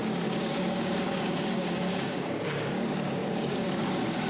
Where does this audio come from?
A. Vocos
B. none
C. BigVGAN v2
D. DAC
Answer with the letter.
D